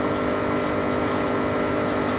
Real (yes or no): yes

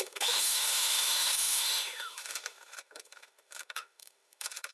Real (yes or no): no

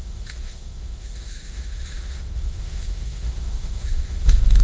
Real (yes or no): no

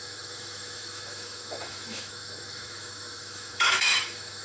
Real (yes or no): no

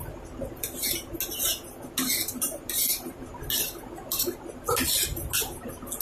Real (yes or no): yes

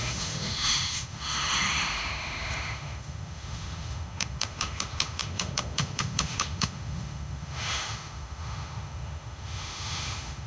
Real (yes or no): no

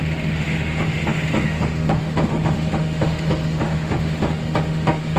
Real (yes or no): no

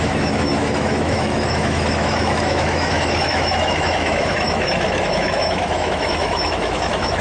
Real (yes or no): no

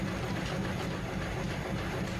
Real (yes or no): yes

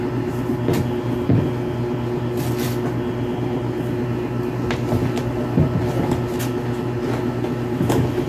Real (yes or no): yes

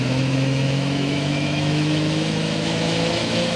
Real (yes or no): no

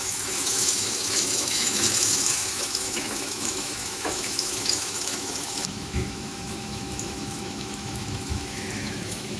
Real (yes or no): no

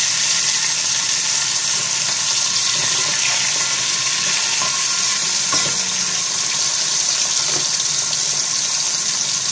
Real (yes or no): yes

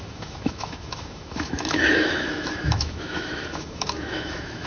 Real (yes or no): no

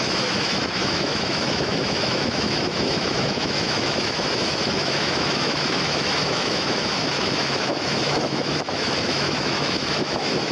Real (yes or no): no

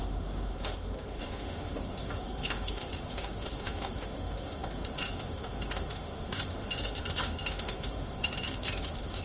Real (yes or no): no